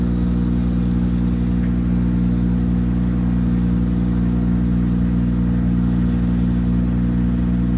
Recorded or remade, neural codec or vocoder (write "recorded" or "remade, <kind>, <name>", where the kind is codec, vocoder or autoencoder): recorded